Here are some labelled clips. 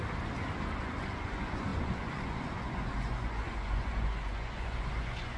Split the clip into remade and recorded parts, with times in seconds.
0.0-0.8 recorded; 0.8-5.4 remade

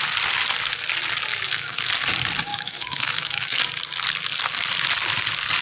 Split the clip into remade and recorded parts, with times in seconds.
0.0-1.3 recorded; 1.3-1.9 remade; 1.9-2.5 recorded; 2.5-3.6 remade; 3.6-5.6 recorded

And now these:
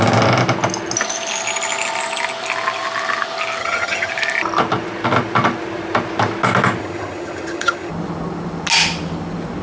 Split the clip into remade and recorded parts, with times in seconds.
0.0-3.6 recorded; 3.6-4.1 remade; 4.1-6.8 recorded; 6.8-7.9 remade; 7.9-9.6 recorded

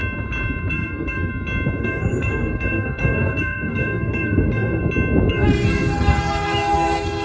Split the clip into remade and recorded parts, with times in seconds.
0.0-0.7 recorded; 0.7-1.3 remade; 1.3-1.8 recorded; 1.8-4.8 remade; 4.8-5.3 recorded; 5.3-7.2 remade

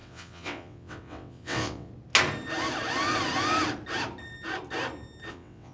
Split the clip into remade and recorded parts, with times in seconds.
0.0-1.9 remade; 1.9-5.3 recorded; 5.3-5.7 remade